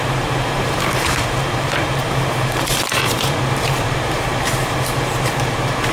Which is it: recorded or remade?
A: remade